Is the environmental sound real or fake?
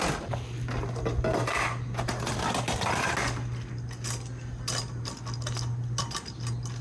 real